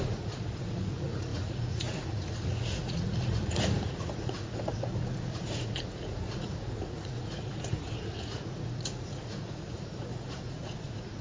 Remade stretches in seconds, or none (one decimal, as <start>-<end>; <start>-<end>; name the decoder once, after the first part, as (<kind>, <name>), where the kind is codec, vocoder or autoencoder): 0.0-11.2 (vocoder, Vocos)